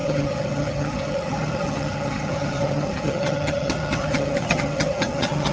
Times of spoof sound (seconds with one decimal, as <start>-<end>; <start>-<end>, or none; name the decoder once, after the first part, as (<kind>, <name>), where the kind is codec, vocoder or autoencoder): 0.0-5.5 (vocoder, HiFi-GAN)